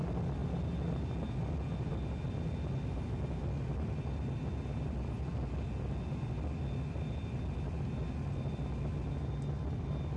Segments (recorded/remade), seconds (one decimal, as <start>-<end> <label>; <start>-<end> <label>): 0.0-10.2 recorded